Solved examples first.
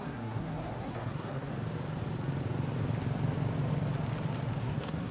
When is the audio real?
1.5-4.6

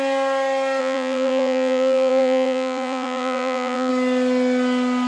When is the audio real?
0.0-0.8; 3.9-5.1